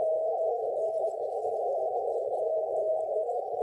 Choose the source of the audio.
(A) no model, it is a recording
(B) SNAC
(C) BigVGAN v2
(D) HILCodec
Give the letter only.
D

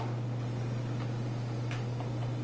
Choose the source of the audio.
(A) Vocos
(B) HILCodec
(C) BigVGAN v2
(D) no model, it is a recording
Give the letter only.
D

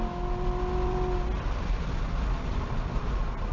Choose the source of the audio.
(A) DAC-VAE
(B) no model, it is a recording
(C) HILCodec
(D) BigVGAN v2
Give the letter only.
B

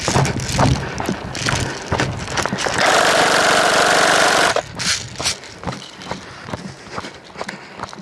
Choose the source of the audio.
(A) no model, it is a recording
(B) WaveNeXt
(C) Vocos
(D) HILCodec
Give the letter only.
A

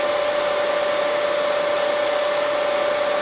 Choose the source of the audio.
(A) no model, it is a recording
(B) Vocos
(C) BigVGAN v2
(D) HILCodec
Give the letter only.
A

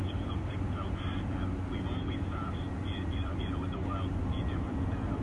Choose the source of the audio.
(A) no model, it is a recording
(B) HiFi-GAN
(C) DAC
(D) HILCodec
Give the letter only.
A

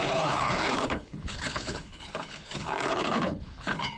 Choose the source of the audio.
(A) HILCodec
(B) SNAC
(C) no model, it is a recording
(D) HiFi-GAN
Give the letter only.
A